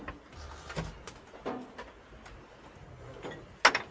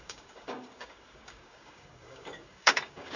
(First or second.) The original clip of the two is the first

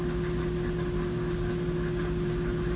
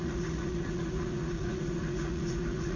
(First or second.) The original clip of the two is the first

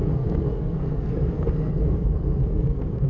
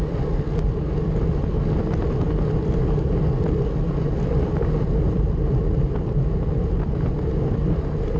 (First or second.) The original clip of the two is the second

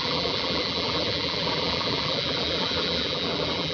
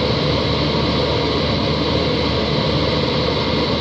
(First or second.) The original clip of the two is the second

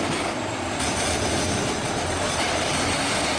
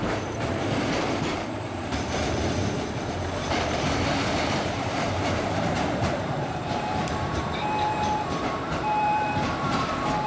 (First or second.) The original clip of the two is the first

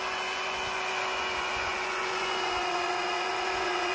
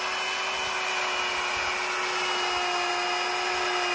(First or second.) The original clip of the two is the second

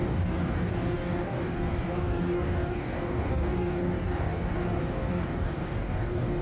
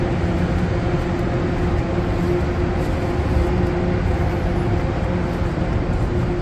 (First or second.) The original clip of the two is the second